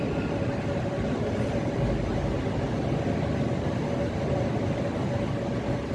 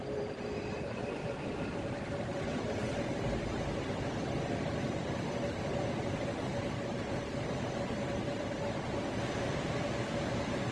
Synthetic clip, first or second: second